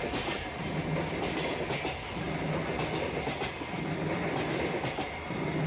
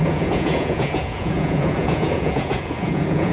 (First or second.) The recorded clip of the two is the first